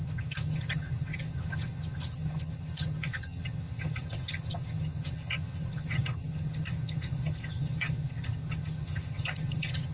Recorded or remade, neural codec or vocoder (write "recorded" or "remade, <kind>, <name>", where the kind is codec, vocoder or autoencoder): remade, vocoder, HiFi-GAN